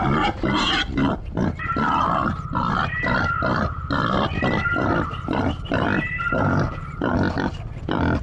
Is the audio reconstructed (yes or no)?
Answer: no